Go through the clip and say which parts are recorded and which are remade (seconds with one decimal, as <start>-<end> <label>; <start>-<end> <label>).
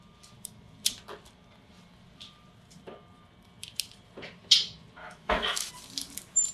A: 0.0-5.0 recorded; 5.0-5.7 remade; 5.7-6.5 recorded